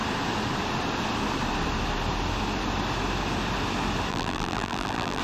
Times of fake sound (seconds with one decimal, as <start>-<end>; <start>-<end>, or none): 4.1-5.2